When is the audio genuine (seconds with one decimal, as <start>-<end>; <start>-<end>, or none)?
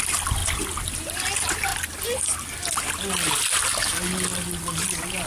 0.0-0.4; 1.2-4.3